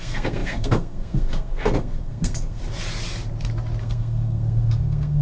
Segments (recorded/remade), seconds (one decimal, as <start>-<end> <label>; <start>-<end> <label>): 0.0-2.6 remade; 2.6-3.8 recorded; 3.8-5.2 remade